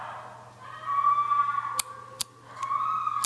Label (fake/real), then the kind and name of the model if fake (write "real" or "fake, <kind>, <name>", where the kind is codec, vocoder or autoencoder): real